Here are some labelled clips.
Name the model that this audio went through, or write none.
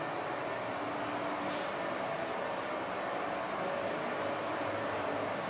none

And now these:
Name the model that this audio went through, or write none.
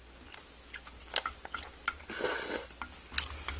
none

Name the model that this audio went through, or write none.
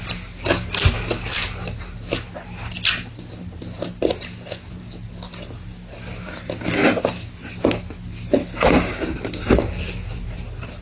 none